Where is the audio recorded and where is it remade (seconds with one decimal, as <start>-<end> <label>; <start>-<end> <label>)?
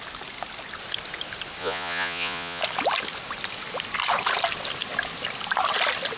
0.0-1.6 recorded; 1.6-2.6 remade; 2.6-6.2 recorded